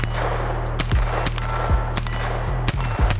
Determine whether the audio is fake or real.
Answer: real